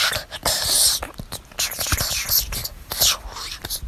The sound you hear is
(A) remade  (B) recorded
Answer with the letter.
B